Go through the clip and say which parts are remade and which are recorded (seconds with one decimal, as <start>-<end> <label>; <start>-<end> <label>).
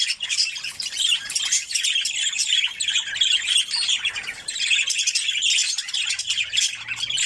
0.0-5.6 recorded; 5.6-6.2 remade; 6.2-7.3 recorded